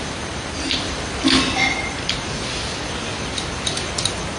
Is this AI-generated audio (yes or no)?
no